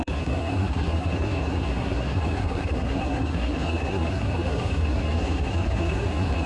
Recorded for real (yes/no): no